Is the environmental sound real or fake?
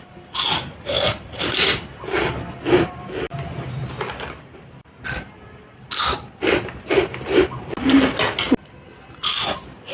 real